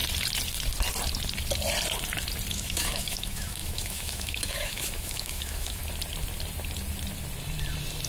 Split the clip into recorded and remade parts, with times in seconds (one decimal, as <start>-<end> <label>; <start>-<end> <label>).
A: 0.0-2.5 recorded; 2.5-5.8 remade; 5.8-8.1 recorded